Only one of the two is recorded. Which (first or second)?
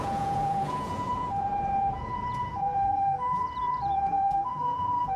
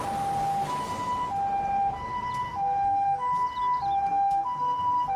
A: second